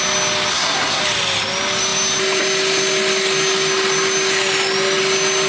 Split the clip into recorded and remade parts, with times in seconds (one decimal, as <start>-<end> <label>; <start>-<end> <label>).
0.0-0.5 recorded; 0.5-1.0 remade; 1.0-5.5 recorded